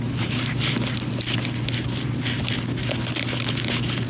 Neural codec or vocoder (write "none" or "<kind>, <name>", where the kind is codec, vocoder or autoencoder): none